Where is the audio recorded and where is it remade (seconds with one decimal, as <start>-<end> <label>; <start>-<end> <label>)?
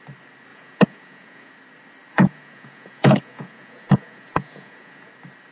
0.0-0.5 recorded; 0.5-1.5 remade; 1.5-2.1 recorded; 2.1-5.1 remade; 5.1-5.5 recorded